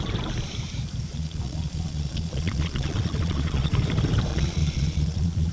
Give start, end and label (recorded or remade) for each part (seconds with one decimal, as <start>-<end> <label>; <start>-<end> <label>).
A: 0.0-1.1 recorded; 1.1-3.7 remade; 3.7-4.3 recorded; 4.3-5.5 remade